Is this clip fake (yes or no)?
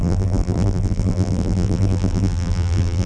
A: yes